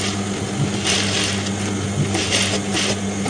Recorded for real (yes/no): yes